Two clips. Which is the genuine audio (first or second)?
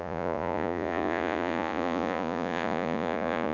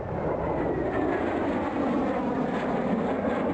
second